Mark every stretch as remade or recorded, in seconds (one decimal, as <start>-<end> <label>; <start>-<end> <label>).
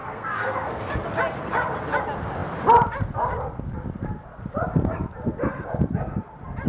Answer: 0.0-0.8 remade; 0.8-6.7 recorded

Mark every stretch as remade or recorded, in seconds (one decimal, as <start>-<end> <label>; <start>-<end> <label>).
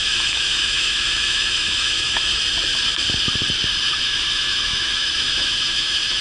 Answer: 0.0-2.3 remade; 2.3-4.0 recorded; 4.0-6.2 remade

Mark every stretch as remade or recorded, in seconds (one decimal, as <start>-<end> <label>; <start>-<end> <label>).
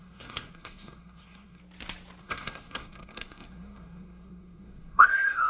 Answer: 0.0-1.6 remade; 1.6-2.2 recorded; 2.2-5.5 remade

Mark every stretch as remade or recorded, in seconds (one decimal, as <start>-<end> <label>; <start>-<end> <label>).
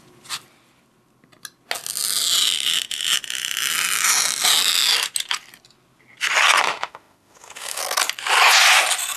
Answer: 0.0-6.6 recorded; 6.6-7.8 remade; 7.8-9.2 recorded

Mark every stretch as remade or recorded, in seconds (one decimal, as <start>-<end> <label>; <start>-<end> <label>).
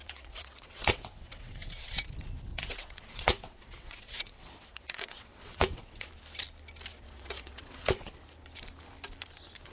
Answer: 0.0-1.9 remade; 1.9-2.5 recorded; 2.5-6.1 remade; 6.1-6.9 recorded; 6.9-8.1 remade; 8.1-9.7 recorded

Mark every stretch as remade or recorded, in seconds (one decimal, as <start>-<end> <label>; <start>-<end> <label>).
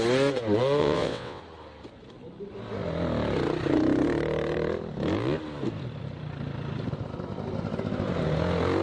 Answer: 0.0-0.8 recorded; 0.8-1.4 remade; 1.4-8.8 recorded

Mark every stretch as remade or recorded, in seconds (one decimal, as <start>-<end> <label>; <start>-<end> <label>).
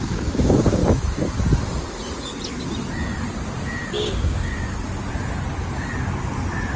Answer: 0.0-0.8 remade; 0.8-3.9 recorded; 3.9-4.5 remade; 4.5-6.8 recorded